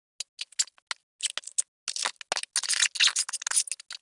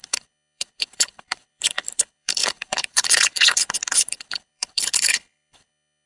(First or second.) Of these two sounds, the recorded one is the first